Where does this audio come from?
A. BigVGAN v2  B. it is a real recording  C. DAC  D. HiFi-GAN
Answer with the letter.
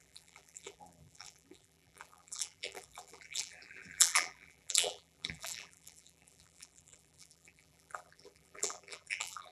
A